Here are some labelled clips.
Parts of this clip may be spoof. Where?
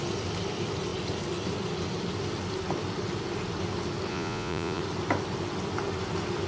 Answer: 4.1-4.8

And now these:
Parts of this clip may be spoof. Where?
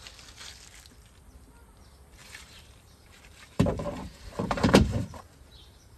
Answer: 2.2-6.0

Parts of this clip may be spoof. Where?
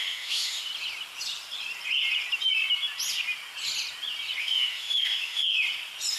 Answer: 0.0-0.7; 4.4-5.4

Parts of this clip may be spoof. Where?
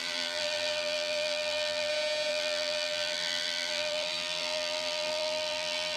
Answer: 0.0-1.9; 2.3-6.0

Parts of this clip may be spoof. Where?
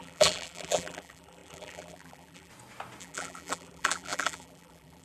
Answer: 0.0-2.5; 3.0-5.0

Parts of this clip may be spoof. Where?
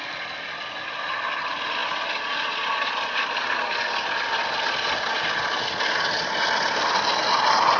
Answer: none